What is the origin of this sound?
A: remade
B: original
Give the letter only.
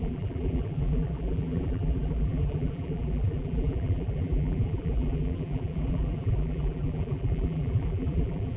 A